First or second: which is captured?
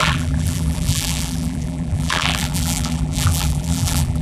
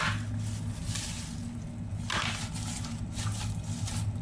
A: second